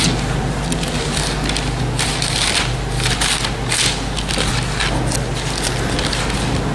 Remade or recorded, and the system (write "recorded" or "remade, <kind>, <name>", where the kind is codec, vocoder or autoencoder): recorded